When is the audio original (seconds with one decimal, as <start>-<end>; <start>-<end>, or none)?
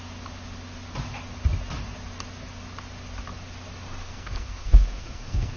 0.0-4.0